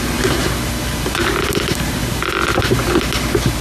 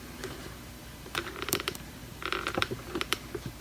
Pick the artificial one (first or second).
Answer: second